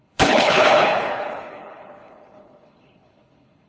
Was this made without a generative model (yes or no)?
no